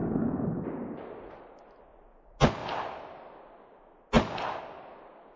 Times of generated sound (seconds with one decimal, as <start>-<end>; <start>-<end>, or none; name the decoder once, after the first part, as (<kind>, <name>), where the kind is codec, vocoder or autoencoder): none